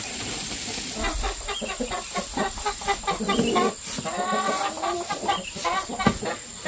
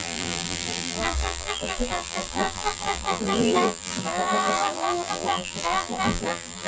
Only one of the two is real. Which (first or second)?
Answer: first